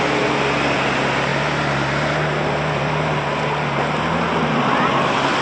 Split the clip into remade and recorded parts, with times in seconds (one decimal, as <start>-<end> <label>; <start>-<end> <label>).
0.0-5.4 recorded